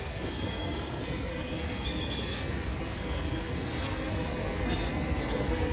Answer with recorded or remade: remade